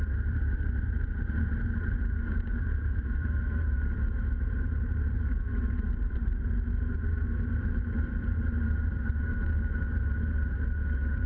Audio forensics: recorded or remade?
remade